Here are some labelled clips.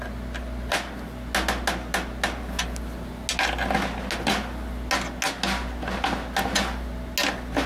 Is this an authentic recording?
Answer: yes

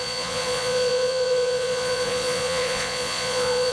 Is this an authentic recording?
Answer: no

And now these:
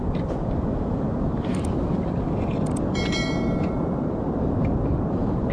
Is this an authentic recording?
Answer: no